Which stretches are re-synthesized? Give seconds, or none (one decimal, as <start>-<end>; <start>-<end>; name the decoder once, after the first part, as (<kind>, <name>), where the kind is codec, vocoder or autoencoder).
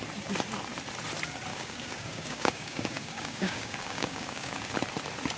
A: 1.5-4.7 (codec, DAC)